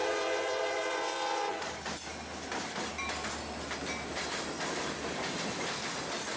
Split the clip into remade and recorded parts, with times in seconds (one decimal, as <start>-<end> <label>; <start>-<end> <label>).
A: 0.0-1.6 remade; 1.6-6.4 recorded